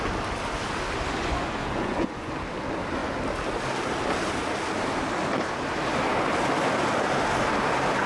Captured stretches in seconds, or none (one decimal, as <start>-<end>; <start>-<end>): 0.0-1.2; 2.3-8.1